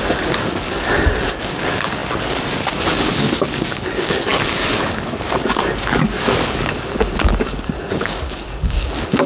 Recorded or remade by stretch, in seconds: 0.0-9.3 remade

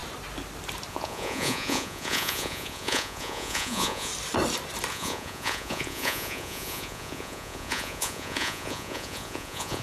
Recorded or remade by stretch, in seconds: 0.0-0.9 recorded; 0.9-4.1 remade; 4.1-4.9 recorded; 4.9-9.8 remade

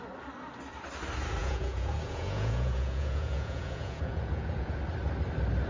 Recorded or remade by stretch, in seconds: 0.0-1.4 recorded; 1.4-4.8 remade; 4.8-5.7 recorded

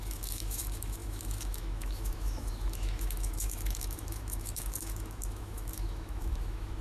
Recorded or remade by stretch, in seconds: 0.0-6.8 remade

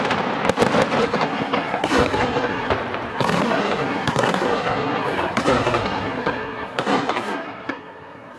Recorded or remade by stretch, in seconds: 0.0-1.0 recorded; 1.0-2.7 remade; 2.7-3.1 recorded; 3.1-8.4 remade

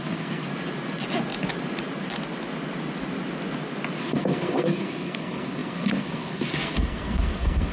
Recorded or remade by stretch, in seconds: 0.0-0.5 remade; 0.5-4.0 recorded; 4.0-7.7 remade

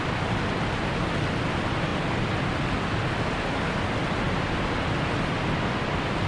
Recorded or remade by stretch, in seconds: 0.0-6.3 recorded

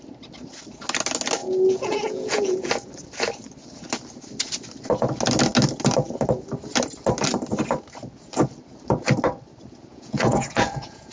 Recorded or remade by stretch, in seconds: 0.0-1.4 recorded; 1.4-2.7 remade; 2.7-9.9 recorded; 9.9-11.1 remade